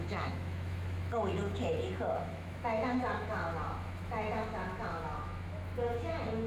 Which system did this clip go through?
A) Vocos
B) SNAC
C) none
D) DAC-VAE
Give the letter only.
D